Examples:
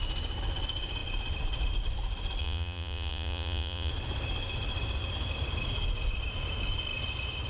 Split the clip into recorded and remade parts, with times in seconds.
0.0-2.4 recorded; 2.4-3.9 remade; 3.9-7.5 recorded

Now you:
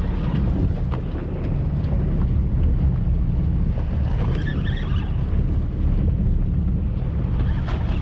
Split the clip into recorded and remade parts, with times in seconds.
0.0-8.0 recorded

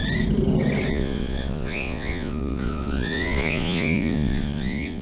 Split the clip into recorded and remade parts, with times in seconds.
0.0-0.9 recorded; 0.9-5.0 remade

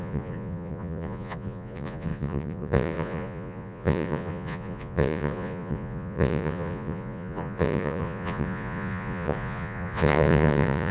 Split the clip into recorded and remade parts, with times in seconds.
0.0-10.9 remade

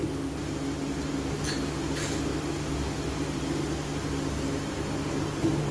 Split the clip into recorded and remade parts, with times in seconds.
0.0-5.7 recorded

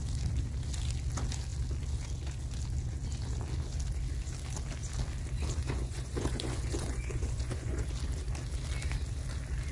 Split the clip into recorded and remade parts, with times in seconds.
0.0-5.6 recorded; 5.6-7.8 remade; 7.8-9.7 recorded